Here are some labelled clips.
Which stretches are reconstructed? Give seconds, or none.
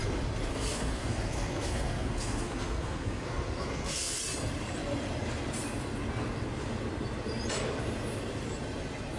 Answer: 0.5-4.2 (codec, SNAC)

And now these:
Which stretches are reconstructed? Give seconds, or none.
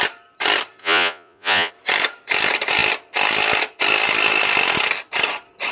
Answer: 0.8-1.7 (vocoder, Vocos)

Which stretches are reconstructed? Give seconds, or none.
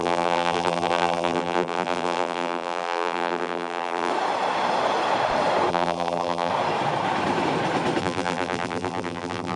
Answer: 0.0-4.1 (vocoder, BigVGAN v2); 5.7-6.5; 8.0-9.6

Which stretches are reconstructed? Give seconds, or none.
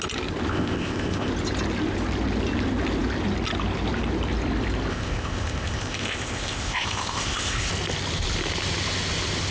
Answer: 0.5-1.3 (codec, ZipCodec); 4.9-7.7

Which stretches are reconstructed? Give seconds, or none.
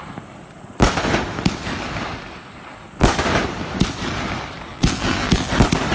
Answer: 4.7-5.5 (vocoder, BigVGAN v2)